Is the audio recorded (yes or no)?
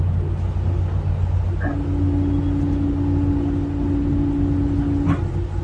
yes